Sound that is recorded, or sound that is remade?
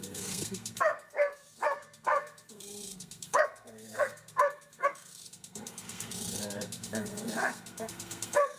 remade